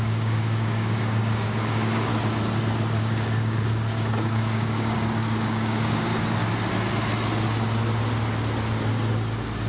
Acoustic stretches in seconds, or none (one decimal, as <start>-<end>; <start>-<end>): 2.1-3.0; 6.1-9.7